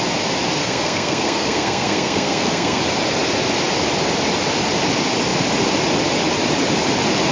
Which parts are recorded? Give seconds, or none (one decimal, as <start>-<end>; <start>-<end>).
0.0-0.6; 2.8-7.3